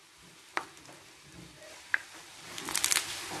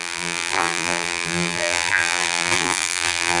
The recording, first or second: first